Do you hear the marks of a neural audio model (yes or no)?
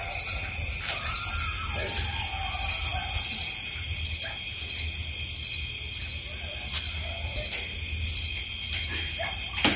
no